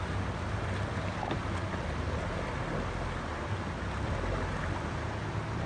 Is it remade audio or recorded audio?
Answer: recorded